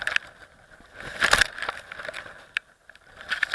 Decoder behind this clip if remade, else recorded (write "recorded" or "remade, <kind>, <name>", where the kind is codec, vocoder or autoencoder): recorded